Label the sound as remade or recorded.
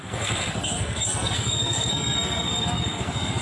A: remade